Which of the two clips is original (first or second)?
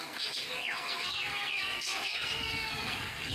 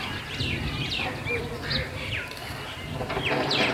second